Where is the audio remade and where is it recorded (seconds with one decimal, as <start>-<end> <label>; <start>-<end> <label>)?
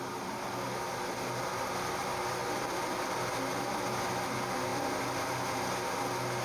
0.0-6.4 recorded